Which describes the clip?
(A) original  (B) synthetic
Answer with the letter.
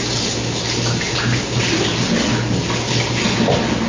A